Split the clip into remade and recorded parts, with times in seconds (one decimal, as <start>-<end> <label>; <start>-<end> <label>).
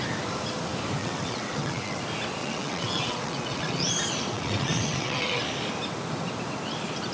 0.0-1.0 recorded; 1.0-2.0 remade; 2.0-2.4 recorded; 2.4-3.9 remade; 3.9-4.3 recorded; 4.3-5.4 remade; 5.4-7.1 recorded